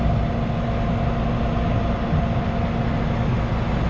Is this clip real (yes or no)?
yes